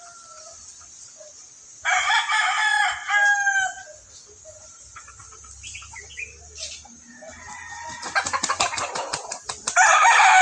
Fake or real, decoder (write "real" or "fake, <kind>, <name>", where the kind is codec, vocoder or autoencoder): real